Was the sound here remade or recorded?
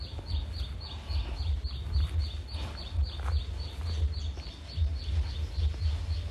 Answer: recorded